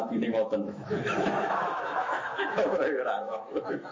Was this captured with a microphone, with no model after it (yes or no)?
no